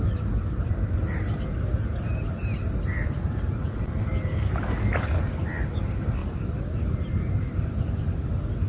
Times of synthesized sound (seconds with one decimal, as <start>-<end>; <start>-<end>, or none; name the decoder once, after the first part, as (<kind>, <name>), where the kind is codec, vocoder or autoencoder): 1.9-4.1 (vocoder, BigVGAN v2)